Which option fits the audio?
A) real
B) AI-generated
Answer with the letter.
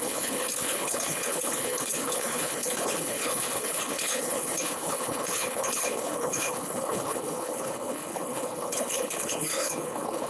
B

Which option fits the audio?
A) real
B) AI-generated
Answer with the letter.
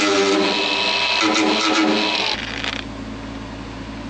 A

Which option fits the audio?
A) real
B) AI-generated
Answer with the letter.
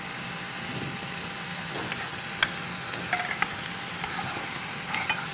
A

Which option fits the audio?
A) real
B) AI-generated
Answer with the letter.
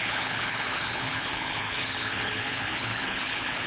B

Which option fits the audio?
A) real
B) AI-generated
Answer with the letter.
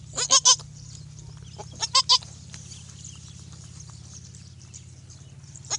A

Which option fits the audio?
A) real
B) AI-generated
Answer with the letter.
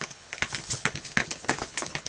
B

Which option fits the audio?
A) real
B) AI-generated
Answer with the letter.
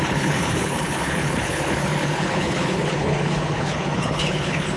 B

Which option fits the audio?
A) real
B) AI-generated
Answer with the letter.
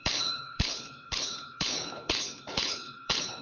B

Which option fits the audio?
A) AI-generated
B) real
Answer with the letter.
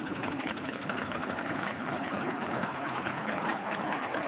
A